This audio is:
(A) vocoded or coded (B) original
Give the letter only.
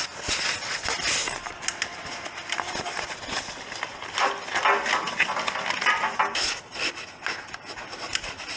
B